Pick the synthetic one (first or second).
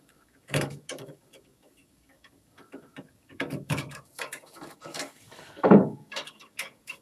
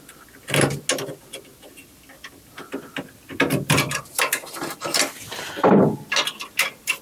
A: first